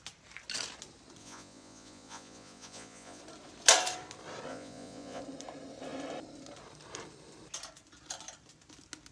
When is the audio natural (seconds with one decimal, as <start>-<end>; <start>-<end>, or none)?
0.0-1.2; 3.2-4.5; 5.2-9.1